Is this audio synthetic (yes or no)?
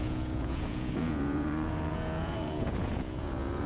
yes